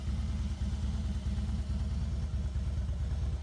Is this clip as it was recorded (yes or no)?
yes